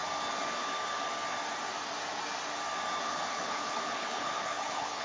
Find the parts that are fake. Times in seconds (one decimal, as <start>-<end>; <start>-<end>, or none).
3.0-5.0